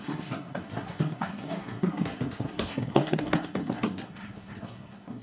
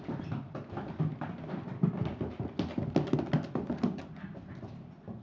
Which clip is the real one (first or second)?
second